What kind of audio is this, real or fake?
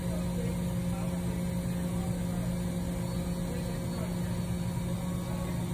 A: real